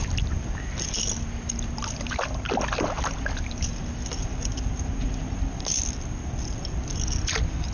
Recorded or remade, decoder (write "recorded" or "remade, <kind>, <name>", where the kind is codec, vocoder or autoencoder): recorded